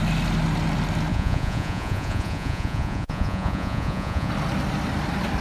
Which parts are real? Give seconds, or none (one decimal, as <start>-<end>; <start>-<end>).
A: 0.0-1.1; 4.3-5.4